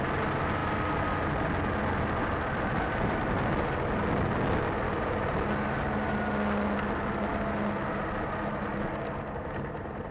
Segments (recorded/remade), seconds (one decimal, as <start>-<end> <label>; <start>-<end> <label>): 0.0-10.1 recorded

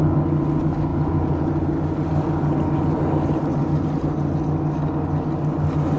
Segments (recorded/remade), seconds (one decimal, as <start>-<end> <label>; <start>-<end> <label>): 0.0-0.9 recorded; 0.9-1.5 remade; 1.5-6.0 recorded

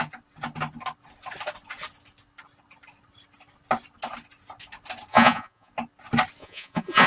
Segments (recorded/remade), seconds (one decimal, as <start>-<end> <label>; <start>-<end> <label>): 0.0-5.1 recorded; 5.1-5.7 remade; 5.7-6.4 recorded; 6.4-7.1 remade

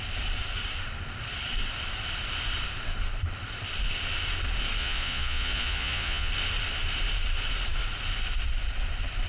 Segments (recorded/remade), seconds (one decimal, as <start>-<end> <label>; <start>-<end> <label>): 0.0-4.8 recorded; 4.8-6.3 remade; 6.3-9.3 recorded